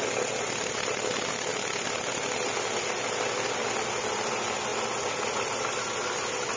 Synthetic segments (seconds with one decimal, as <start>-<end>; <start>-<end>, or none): none